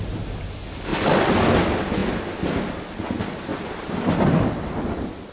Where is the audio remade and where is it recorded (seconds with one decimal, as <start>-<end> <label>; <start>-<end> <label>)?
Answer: 0.0-5.3 recorded